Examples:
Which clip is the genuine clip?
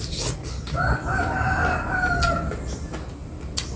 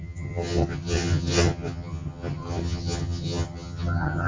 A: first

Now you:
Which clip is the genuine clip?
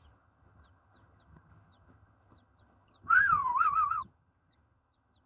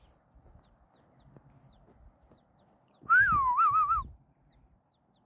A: second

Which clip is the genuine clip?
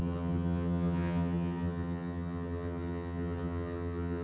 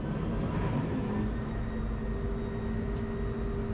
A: second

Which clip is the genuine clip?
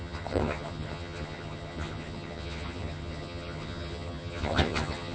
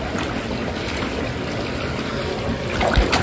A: second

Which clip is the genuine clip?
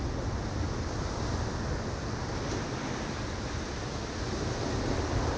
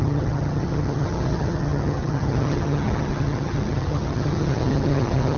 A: first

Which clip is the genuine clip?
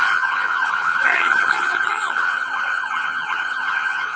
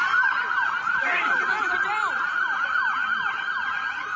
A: second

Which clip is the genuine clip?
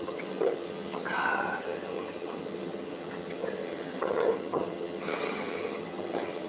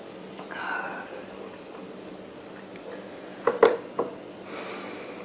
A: second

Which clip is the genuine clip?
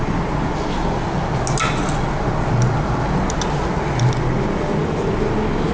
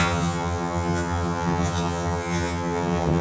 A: first